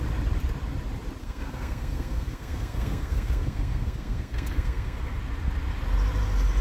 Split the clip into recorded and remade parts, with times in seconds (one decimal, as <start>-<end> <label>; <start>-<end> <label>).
0.0-1.2 recorded; 1.2-5.2 remade; 5.2-6.6 recorded